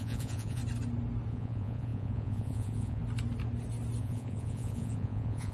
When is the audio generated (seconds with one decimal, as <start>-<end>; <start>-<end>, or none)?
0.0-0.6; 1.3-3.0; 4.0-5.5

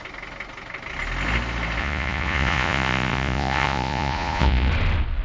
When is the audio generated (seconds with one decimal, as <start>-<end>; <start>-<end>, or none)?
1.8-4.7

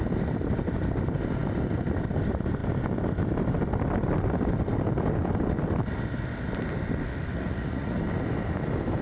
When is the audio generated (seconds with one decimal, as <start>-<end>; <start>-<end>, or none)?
7.3-8.0